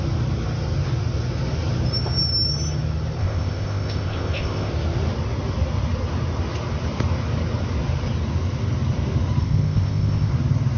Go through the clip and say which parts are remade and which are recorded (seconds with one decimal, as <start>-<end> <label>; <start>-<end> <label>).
0.0-3.2 recorded; 3.2-4.7 remade; 4.7-9.4 recorded; 9.4-10.3 remade; 10.3-10.8 recorded